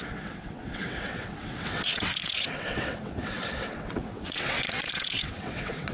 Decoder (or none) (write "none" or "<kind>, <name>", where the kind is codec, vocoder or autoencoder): vocoder, WaveNeXt